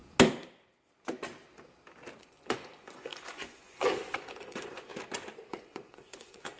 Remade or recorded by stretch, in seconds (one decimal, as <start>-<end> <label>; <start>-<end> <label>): 0.0-2.2 recorded; 2.2-4.9 remade; 4.9-5.5 recorded; 5.5-6.6 remade